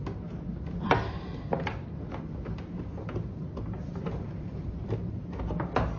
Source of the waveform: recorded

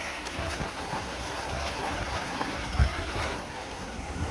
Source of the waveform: remade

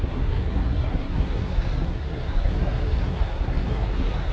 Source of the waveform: remade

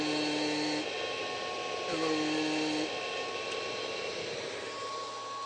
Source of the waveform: recorded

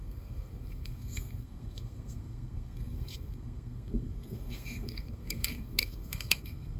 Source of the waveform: remade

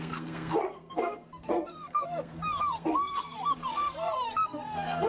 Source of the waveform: remade